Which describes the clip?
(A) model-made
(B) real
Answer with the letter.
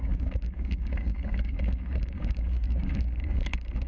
A